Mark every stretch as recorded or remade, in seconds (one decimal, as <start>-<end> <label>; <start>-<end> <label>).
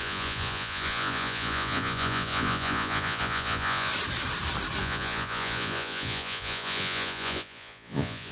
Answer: 0.0-3.9 remade; 3.9-4.8 recorded; 4.8-8.3 remade